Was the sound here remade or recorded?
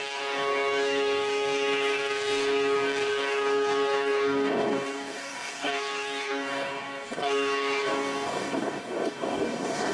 remade